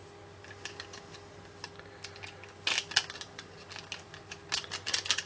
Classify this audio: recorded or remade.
recorded